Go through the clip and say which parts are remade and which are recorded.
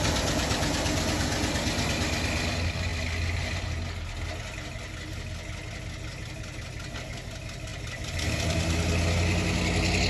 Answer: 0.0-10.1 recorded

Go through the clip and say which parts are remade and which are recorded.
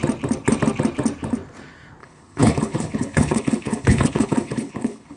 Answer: 0.0-2.0 recorded; 2.0-5.2 remade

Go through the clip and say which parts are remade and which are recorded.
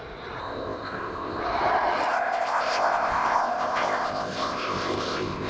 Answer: 0.0-0.4 recorded; 0.4-1.4 remade; 1.4-2.1 recorded; 2.1-5.5 remade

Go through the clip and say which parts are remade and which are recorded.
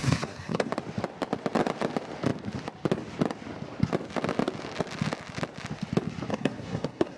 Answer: 0.0-0.7 remade; 0.7-6.3 recorded; 6.3-7.2 remade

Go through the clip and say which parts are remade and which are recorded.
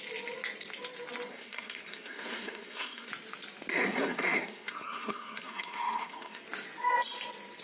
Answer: 0.0-1.3 recorded; 1.3-3.1 remade; 3.1-3.7 recorded; 3.7-6.4 remade; 6.4-7.6 recorded